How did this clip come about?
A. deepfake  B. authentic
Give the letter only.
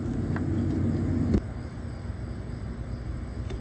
B